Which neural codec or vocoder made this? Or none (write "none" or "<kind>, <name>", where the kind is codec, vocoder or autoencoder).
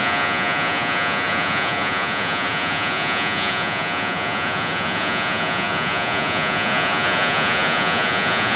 vocoder, Vocos